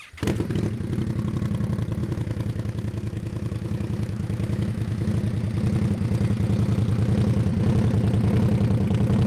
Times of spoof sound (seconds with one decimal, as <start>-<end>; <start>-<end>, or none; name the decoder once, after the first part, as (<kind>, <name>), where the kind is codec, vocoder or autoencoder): 2.0-5.1 (autoencoder, DAC-VAE)